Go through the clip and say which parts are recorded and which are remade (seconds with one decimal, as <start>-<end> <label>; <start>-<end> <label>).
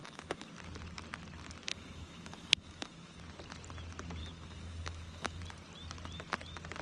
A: 0.0-0.5 remade; 0.5-1.7 recorded; 1.7-3.2 remade; 3.2-4.2 recorded; 4.2-5.4 remade; 5.4-6.8 recorded